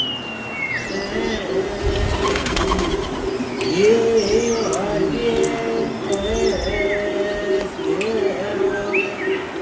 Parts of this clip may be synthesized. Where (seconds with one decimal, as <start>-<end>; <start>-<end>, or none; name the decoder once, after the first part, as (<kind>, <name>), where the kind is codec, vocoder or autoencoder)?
2.3-2.9 (codec, SNAC)